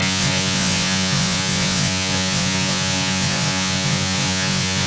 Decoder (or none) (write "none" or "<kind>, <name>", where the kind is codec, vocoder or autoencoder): vocoder, Vocos